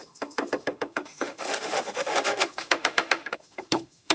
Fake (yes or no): yes